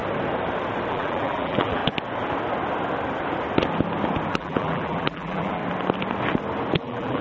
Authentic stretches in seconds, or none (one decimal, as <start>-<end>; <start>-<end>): 0.0-0.9; 1.8-4.3; 5.6-6.8